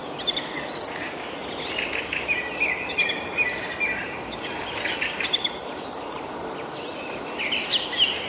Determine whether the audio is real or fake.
real